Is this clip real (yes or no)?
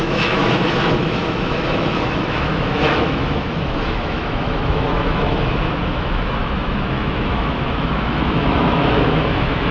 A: no